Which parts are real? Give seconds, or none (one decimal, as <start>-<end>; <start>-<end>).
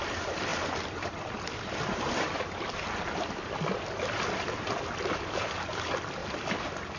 0.0-7.0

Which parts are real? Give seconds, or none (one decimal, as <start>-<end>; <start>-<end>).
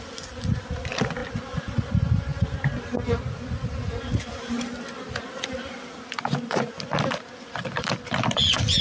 2.3-7.4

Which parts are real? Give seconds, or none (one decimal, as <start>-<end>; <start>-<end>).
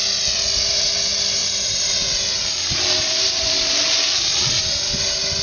0.0-1.4; 4.6-5.4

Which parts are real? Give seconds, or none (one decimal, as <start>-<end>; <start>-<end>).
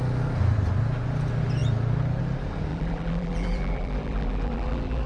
0.0-2.7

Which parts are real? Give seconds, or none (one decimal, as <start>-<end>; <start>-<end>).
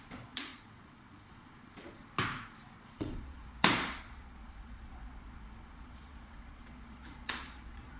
2.0-2.9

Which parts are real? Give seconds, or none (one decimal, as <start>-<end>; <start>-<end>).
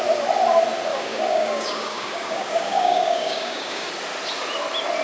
0.0-0.9; 3.9-5.0